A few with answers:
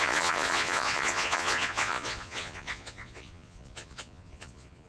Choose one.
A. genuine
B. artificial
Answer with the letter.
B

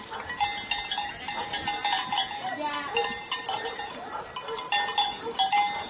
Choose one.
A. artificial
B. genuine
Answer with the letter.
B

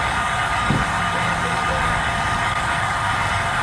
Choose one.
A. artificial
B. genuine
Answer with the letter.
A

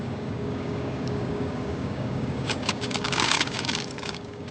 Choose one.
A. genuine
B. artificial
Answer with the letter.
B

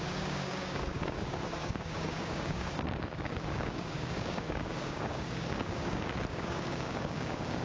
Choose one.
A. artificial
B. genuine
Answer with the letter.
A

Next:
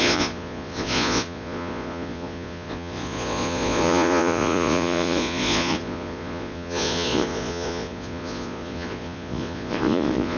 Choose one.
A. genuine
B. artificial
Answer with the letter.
B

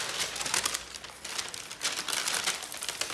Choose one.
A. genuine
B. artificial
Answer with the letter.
A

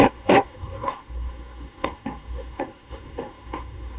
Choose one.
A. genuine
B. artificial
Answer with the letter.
B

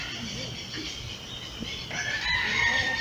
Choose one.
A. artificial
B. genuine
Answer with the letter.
B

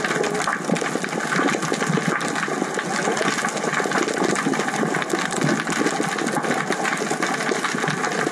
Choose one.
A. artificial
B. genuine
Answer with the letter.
B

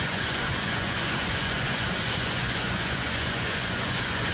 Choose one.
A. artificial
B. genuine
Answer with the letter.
A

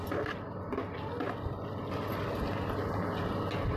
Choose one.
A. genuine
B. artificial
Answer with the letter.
A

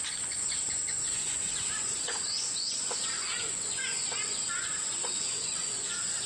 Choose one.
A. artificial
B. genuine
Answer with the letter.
A